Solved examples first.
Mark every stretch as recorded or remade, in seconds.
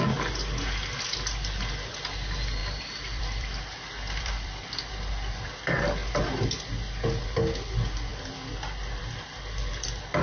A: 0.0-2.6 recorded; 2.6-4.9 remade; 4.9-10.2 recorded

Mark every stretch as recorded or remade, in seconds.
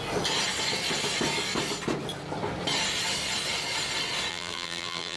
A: 0.0-4.3 recorded; 4.3-5.2 remade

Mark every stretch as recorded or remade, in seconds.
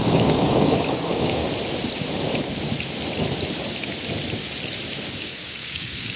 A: 0.0-1.4 remade; 1.4-5.1 recorded; 5.1-6.2 remade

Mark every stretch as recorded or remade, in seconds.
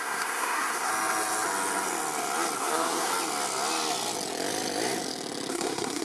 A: 0.0-0.9 remade; 0.9-2.6 recorded; 2.6-3.1 remade; 3.1-5.5 recorded; 5.5-6.0 remade